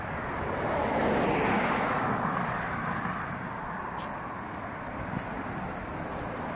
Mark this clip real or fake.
real